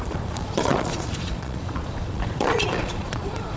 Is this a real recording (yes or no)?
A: no